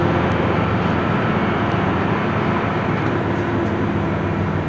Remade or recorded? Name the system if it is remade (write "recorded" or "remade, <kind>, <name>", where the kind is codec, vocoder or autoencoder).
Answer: recorded